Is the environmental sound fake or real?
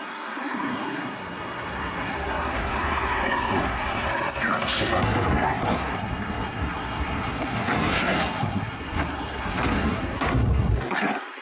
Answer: fake